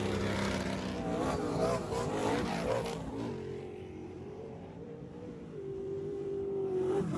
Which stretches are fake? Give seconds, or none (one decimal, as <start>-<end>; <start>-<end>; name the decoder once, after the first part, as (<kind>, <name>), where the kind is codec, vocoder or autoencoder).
2.2-3.3 (vocoder, BigVGAN v2); 4.0-7.2